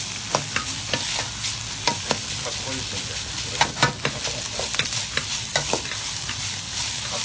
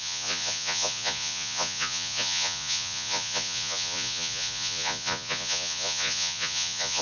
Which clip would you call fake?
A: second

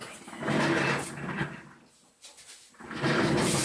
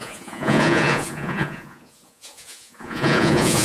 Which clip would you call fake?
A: second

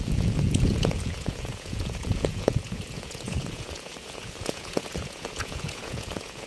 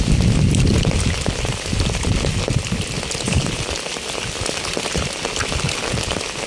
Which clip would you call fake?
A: first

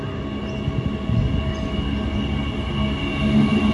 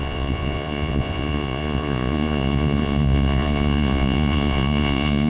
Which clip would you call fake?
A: second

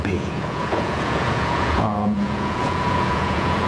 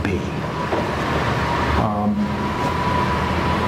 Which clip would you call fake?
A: first